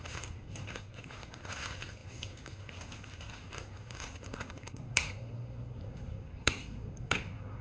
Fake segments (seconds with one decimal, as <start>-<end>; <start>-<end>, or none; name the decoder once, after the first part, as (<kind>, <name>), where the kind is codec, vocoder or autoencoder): 0.0-7.6 (codec, SNAC)